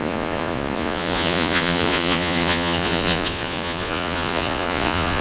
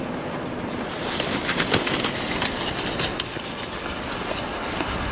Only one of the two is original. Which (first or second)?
second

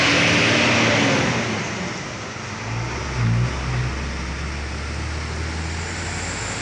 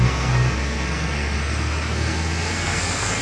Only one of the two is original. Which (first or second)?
first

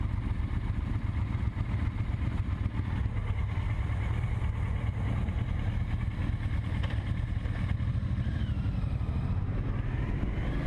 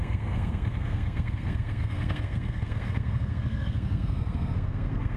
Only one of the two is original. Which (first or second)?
first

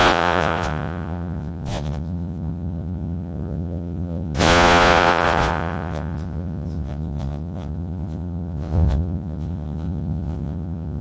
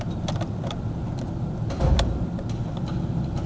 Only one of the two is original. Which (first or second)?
second